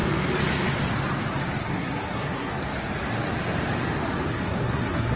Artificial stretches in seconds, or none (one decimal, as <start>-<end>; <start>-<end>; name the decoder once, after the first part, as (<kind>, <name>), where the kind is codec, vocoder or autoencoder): 1.6-2.5 (codec, SNAC); 4.3-5.2